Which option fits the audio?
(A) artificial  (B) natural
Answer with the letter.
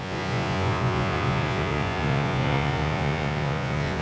A